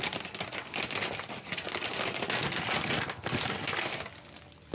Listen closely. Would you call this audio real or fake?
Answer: real